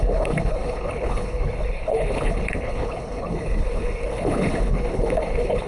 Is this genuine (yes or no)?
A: no